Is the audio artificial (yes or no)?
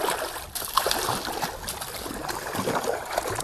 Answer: no